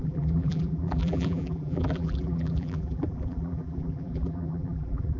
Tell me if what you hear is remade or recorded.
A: remade